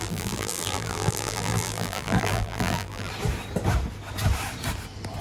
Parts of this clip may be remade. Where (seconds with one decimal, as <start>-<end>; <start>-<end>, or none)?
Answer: 0.0-3.1